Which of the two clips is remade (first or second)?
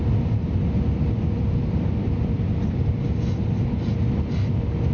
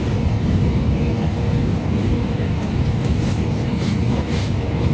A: second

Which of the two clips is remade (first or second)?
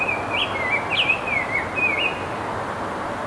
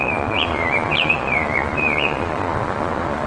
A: second